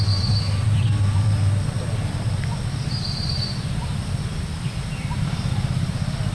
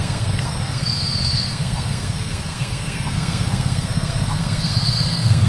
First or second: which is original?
first